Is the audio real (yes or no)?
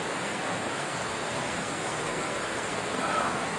no